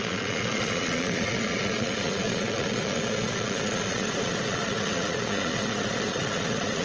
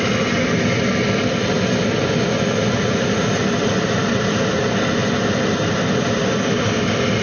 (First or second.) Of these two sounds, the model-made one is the first